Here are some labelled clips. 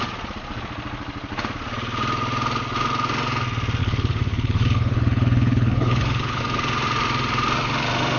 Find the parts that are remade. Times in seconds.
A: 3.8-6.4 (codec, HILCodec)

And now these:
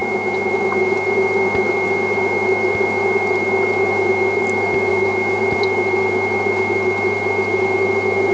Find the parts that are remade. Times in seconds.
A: 0.0-0.8 (autoencoder, DAC-VAE); 4.9-5.4

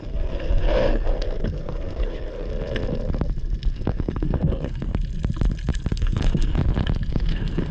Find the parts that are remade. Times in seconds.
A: 0.0-2.5 (codec, SNAC); 3.7-4.9; 5.9-6.6; 7.1-7.7

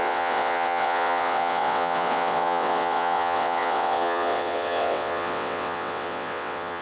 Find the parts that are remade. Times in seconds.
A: 0.0-6.8 (vocoder, WaveNeXt)

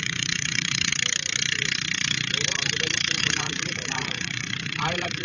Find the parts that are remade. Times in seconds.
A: 0.0-0.9 (vocoder, Vocos); 3.2-5.2

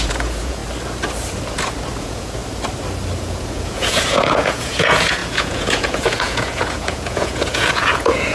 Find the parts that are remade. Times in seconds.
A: 0.0-0.6 (vocoder, Vocos); 2.0-2.4; 3.2-8.3

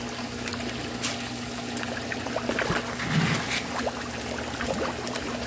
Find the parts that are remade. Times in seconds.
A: none

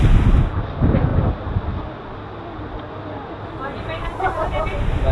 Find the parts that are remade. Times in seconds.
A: none